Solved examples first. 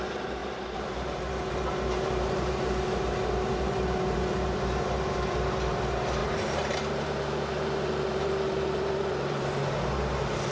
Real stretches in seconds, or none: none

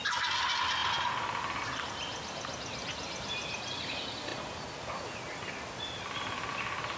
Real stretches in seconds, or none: 2.1-2.9; 4.3-7.0

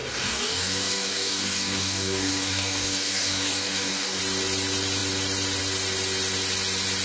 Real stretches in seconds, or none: 4.2-7.0

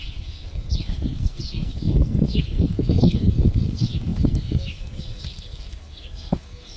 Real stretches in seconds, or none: none

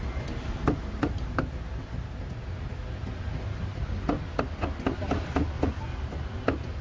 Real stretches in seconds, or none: 0.0-6.8

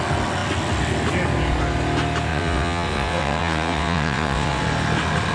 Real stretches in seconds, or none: 0.0-2.3; 4.6-5.3

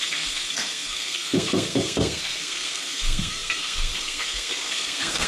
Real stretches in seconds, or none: none

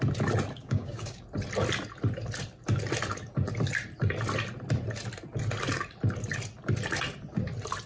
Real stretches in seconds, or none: 0.0-0.6; 1.2-7.9